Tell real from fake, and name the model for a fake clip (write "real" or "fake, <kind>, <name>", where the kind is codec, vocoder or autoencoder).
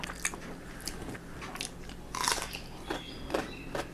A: real